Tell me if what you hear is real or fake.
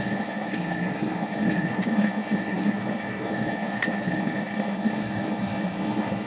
fake